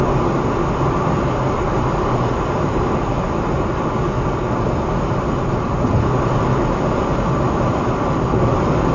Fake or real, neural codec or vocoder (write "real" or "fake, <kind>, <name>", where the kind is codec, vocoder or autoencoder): real